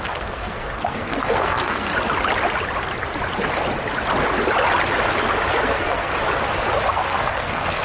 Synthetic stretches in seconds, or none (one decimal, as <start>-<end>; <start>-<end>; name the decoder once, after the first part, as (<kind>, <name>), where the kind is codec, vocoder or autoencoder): 0.0-1.9 (codec, SNAC); 5.5-6.1; 6.9-7.8

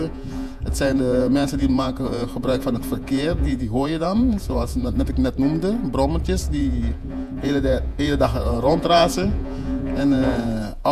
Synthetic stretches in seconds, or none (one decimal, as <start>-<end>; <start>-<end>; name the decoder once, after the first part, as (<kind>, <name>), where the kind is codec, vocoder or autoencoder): 0.0-5.1 (vocoder, Vocos); 6.6-10.9

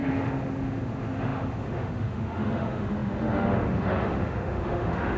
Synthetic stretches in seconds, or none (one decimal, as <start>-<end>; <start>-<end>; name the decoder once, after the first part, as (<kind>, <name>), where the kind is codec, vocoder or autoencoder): 0.0-5.2 (autoencoder, DAC-VAE)